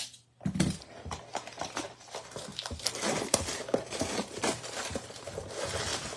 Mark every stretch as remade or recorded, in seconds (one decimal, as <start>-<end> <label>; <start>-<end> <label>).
0.0-2.5 recorded; 2.5-5.2 remade; 5.2-6.2 recorded